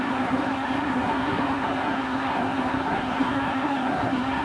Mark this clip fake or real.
fake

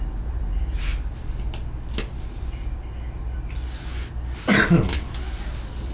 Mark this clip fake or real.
real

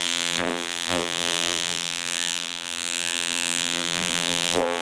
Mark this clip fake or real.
fake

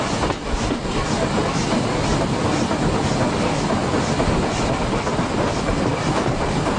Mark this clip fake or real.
real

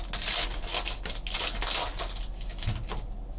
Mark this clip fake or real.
real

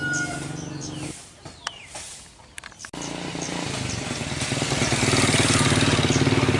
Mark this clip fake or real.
real